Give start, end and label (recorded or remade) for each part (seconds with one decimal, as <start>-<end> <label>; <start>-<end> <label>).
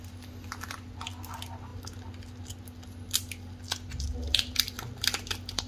0.0-5.7 recorded